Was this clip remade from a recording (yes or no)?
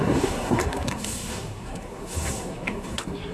yes